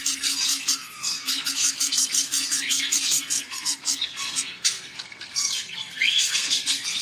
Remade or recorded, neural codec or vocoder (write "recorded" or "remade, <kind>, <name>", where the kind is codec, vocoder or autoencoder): remade, codec, SNAC